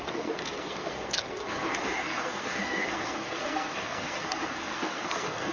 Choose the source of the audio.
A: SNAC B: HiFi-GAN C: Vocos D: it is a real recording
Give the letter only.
A